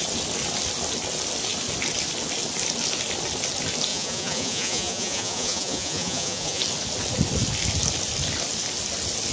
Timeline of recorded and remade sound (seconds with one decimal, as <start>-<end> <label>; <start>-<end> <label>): 0.0-3.9 recorded; 3.9-6.6 remade; 6.6-9.3 recorded